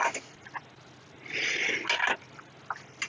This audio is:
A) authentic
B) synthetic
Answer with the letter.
A